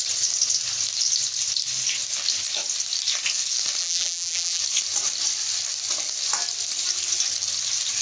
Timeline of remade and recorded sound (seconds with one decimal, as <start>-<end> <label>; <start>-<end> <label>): 0.0-3.8 recorded; 3.8-4.6 remade; 4.6-8.0 recorded

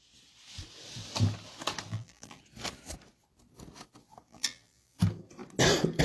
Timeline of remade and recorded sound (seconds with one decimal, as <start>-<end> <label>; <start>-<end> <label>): 0.0-1.9 recorded; 1.9-2.4 remade; 2.4-4.3 recorded; 4.3-5.0 remade; 5.0-6.0 recorded